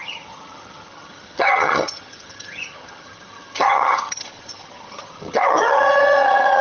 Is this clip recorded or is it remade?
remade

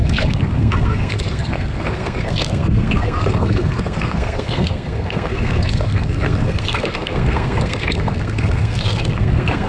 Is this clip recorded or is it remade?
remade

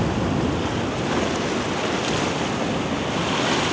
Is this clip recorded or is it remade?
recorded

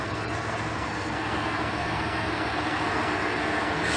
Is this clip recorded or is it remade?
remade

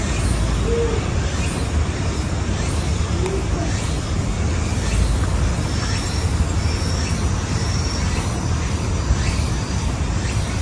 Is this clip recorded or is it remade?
recorded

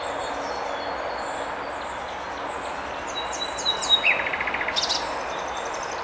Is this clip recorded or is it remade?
recorded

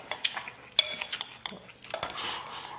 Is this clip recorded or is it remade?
recorded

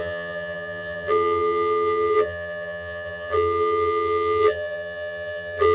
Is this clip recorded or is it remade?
remade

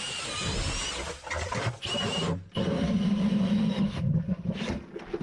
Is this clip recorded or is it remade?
recorded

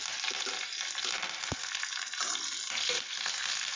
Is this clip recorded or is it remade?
recorded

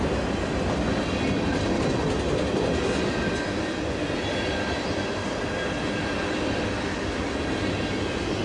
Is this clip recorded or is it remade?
recorded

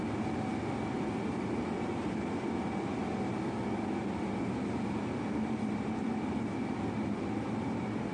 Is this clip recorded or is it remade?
recorded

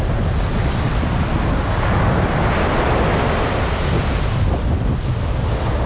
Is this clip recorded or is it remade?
recorded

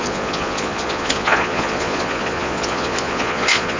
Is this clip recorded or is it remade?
remade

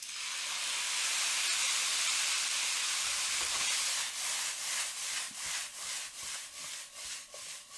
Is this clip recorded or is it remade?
recorded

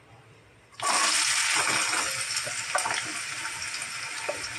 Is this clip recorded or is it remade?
recorded